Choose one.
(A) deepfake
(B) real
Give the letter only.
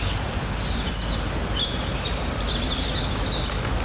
B